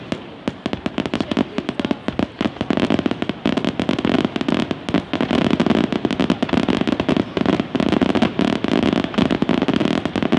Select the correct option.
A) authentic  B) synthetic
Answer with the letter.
A